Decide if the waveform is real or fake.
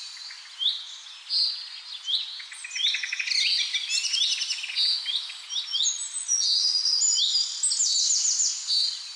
real